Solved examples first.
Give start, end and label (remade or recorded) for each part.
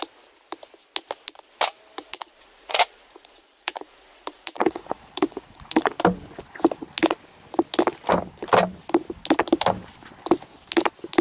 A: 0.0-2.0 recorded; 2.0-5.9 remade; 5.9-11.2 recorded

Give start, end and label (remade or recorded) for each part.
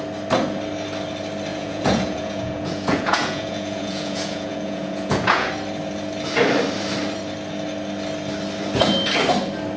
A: 0.0-1.5 recorded; 1.5-5.5 remade; 5.5-9.8 recorded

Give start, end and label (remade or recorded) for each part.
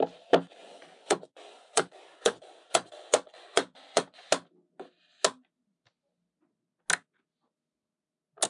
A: 0.0-0.6 recorded; 0.6-4.3 remade; 4.3-8.5 recorded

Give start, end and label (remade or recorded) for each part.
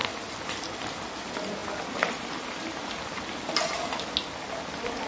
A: 0.0-5.1 recorded